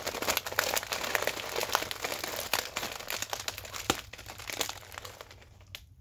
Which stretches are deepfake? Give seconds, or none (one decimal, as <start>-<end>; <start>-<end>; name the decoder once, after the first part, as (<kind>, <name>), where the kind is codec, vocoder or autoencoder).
none